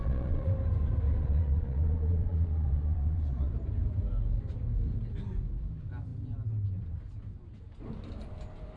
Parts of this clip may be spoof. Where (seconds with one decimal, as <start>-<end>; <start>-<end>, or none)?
0.0-0.5; 1.2-3.5